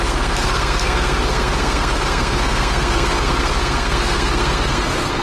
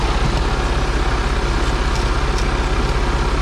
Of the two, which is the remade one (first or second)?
first